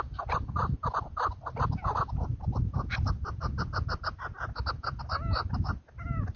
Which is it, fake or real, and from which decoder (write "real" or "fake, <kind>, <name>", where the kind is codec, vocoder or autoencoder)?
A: real